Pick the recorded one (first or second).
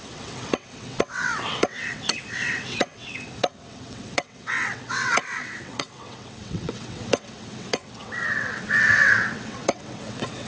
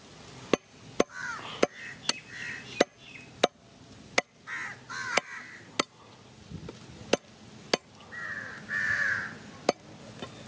second